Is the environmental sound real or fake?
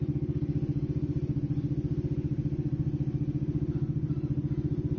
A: real